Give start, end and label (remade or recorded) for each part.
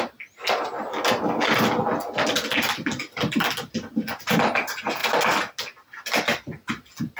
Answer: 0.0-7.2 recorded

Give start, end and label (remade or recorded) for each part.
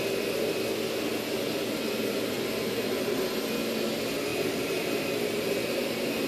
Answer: 0.0-4.3 recorded; 4.3-6.3 remade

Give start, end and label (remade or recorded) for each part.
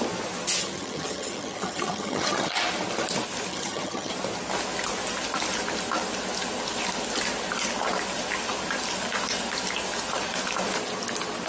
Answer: 0.0-0.6 recorded; 0.6-2.6 remade; 2.6-3.5 recorded; 3.5-4.1 remade; 4.1-11.5 recorded